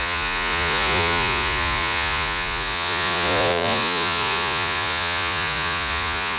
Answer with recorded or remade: remade